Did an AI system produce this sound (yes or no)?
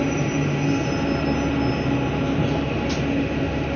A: no